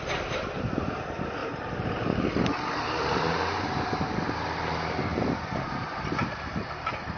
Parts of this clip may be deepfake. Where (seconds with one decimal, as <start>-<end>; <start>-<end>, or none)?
0.0-7.2